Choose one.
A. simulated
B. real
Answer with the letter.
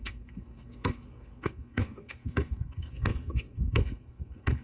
A